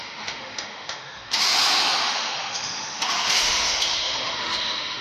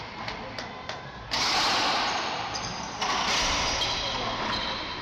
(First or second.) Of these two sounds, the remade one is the first